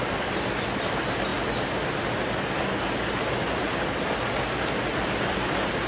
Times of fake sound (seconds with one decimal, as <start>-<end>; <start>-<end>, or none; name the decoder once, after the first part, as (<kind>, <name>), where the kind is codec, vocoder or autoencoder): none